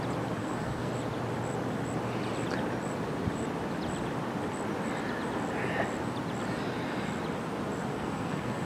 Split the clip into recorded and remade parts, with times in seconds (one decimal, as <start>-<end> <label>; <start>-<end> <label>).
0.0-0.4 recorded; 0.4-0.9 remade; 0.9-7.9 recorded; 7.9-8.7 remade